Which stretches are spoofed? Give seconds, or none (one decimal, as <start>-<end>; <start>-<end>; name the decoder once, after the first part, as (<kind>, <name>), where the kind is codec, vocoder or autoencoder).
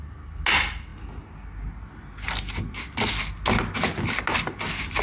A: none